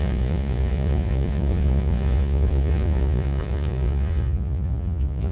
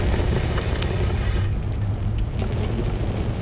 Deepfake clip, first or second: first